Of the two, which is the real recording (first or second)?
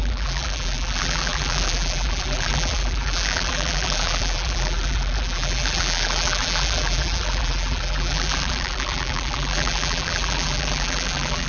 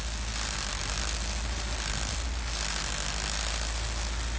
second